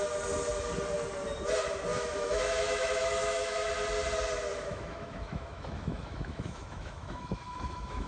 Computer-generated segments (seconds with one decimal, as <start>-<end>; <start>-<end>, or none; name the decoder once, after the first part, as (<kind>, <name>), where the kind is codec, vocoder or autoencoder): 1.9-3.7 (autoencoder, DAC-VAE); 4.5-8.1